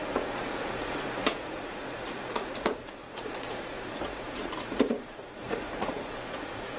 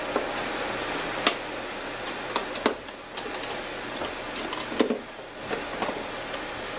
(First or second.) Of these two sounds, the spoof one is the first